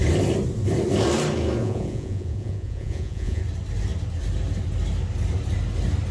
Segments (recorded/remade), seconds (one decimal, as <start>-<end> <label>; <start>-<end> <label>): 0.0-1.6 recorded; 1.6-3.4 remade; 3.4-6.1 recorded